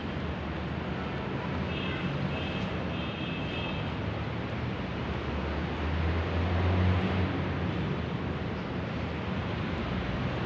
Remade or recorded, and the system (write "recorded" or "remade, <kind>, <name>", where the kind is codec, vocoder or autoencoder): recorded